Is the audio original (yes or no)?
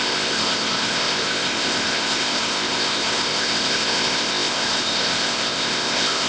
no